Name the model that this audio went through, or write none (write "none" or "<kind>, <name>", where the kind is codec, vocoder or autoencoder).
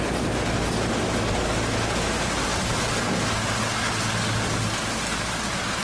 none